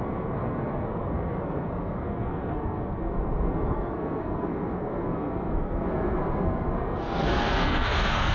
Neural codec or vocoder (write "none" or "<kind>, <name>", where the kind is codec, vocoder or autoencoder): codec, SNAC